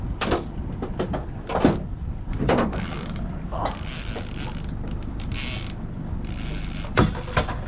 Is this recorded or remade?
recorded